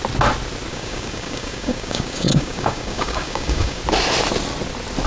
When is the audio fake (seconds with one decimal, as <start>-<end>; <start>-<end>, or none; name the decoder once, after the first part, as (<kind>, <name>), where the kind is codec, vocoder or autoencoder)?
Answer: 0.7-3.8 (codec, DAC)